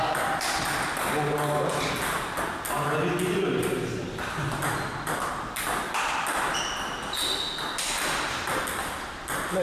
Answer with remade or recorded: remade